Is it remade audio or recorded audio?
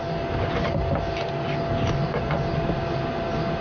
recorded